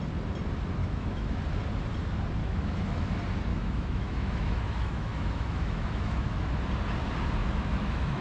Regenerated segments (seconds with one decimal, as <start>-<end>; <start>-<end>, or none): 0.8-1.4; 2.4-3.1; 3.5-6.6; 7.4-8.2